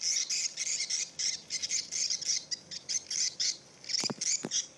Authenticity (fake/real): real